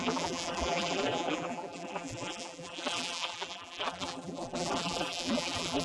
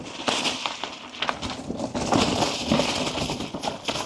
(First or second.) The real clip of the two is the second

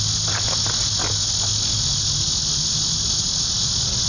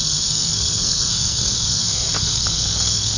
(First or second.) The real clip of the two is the first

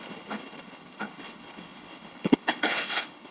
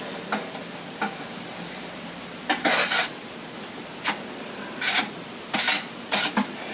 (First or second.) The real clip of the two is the second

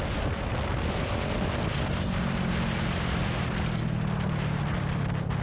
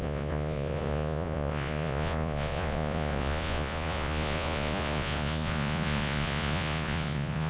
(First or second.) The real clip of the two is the first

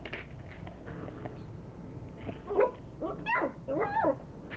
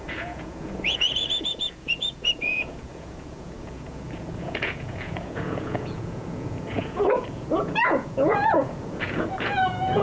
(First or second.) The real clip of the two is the first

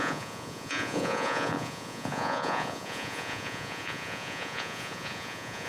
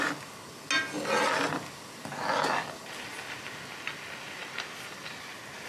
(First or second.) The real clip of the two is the second